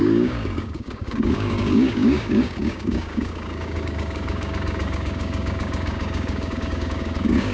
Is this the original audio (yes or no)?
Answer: no